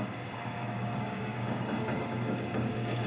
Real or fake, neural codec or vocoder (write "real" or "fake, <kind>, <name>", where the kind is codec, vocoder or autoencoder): fake, codec, DAC